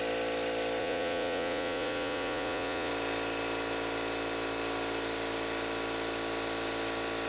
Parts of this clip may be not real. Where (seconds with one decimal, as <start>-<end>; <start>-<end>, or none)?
0.8-2.9